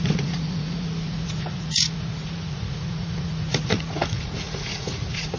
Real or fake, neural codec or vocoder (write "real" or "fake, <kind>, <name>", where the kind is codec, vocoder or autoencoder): fake, vocoder, Vocos